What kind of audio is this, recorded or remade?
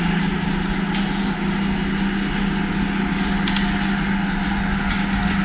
recorded